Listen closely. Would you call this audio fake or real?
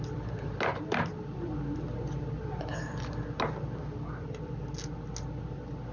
real